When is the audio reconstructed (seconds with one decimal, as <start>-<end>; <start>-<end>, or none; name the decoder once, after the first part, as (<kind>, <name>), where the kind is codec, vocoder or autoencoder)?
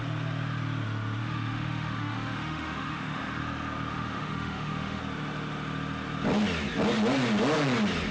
1.2-3.4 (autoencoder, DAC-VAE); 3.9-5.0